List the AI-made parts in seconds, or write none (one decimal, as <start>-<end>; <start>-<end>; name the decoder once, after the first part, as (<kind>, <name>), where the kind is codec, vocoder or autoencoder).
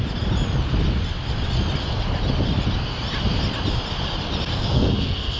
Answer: 4.5-5.4 (codec, SNAC)